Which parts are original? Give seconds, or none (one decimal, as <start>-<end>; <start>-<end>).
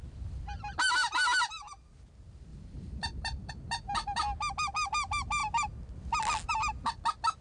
0.0-2.5; 3.5-7.4